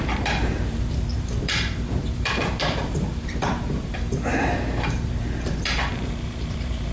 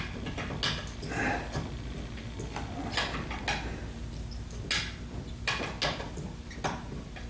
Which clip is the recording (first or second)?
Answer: second